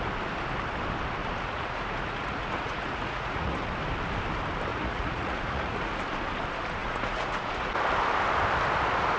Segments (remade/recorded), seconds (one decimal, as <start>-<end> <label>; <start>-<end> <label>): 0.0-1.2 recorded; 1.2-3.7 remade; 3.7-4.7 recorded; 4.7-6.0 remade; 6.0-6.8 recorded; 6.8-7.7 remade; 7.7-9.2 recorded